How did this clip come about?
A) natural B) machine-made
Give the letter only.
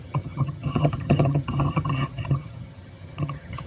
B